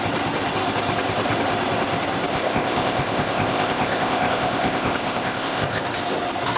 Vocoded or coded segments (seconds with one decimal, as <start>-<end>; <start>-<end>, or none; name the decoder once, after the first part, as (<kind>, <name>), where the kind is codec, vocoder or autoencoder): 2.3-5.8 (codec, ZipCodec)